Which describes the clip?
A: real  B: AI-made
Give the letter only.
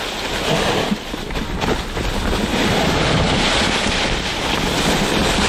A